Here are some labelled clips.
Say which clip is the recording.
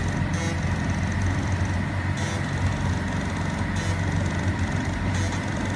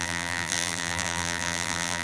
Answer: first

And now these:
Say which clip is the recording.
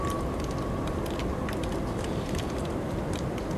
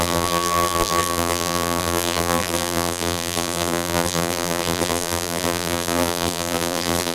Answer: first